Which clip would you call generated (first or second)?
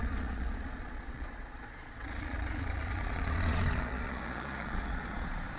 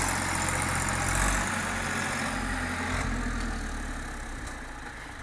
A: first